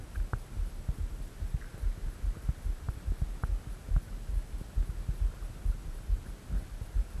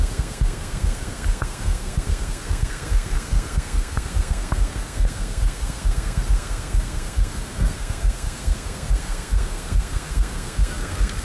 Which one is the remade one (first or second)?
second